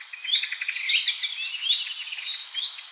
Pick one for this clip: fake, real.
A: real